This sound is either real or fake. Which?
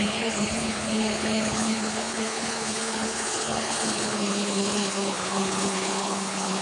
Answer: fake